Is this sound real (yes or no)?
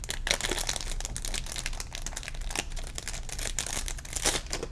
yes